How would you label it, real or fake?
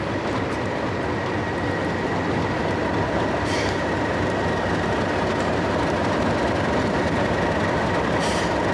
real